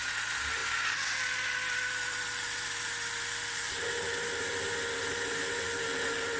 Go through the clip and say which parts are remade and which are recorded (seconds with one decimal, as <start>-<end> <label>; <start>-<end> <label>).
0.0-6.4 recorded